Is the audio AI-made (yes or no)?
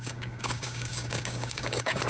yes